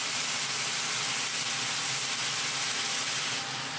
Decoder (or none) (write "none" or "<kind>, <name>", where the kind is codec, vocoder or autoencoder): none